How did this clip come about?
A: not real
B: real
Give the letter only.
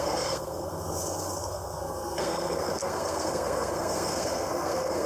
A